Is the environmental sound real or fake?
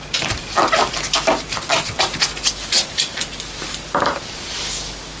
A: real